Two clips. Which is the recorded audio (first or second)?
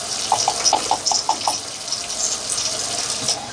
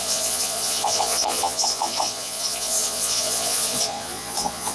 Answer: first